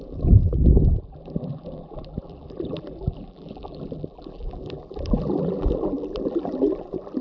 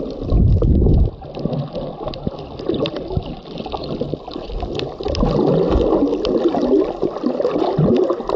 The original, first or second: second